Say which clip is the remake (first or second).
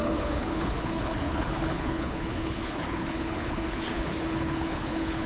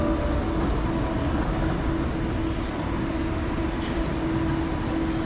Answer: first